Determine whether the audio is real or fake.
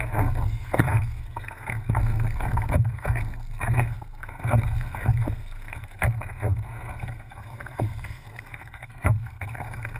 fake